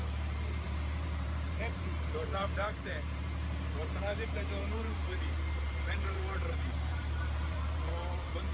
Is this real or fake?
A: fake